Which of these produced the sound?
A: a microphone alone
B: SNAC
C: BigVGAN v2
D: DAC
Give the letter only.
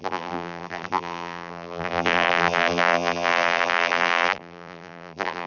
C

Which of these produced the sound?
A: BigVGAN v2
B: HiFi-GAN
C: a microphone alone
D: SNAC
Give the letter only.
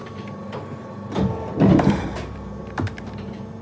A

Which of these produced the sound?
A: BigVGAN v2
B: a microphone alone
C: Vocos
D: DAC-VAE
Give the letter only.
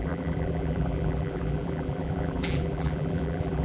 A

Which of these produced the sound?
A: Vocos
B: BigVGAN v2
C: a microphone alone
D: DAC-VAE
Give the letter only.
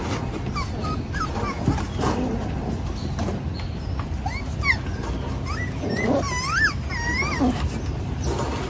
C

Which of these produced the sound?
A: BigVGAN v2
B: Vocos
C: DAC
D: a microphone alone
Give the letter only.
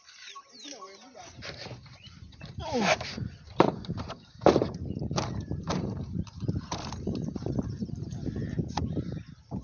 A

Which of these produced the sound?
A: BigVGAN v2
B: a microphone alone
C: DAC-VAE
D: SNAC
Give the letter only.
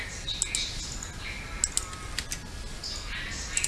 B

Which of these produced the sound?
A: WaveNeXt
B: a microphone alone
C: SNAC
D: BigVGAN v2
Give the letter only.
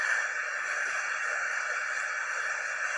B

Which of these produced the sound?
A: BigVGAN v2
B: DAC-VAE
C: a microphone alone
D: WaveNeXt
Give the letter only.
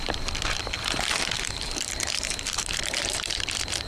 A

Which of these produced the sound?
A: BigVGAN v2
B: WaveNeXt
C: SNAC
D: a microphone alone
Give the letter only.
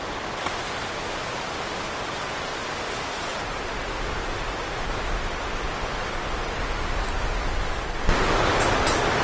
D